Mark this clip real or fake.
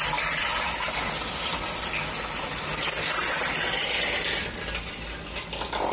real